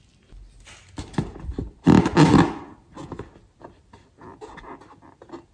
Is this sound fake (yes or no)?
no